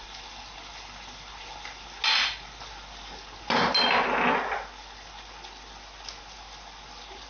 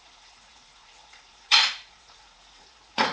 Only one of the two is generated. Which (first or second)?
second